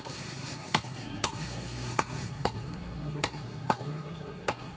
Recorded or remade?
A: remade